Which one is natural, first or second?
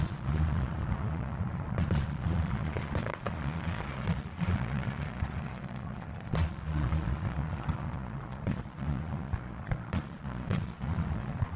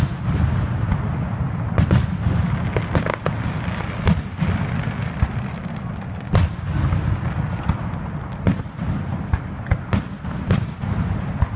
second